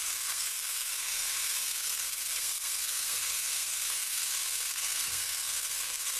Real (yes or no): no